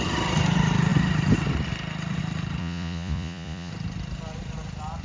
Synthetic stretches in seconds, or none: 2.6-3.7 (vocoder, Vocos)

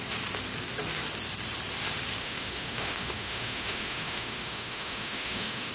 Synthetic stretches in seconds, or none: 2.2-5.7 (autoencoder, DAC-VAE)

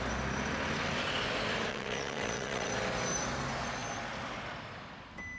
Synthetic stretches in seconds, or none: 1.7-2.7 (vocoder, WaveNeXt)

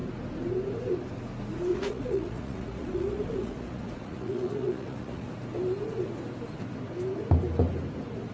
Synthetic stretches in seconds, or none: 1.7-5.3 (vocoder, Vocos)

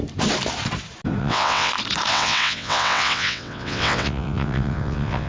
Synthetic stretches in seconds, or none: 1.2-1.7 (vocoder, WaveNeXt); 2.1-5.3

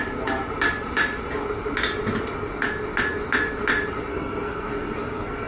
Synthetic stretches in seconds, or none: 4.1-5.5 (codec, SNAC)

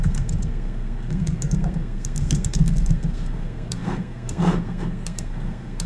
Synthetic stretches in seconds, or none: 0.0-5.9 (codec, SNAC)